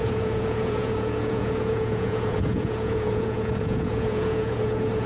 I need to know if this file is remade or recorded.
remade